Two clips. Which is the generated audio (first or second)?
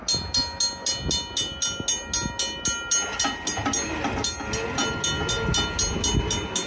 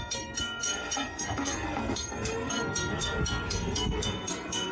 second